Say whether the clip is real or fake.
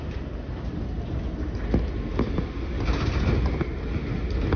real